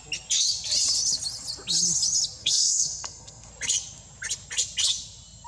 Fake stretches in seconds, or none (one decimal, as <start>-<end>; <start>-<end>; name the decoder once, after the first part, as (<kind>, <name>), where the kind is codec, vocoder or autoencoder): 2.4-3.5 (codec, SNAC)